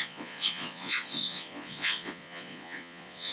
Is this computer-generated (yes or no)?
yes